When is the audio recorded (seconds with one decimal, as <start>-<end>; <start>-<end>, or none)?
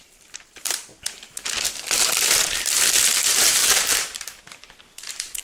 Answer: 0.9-2.1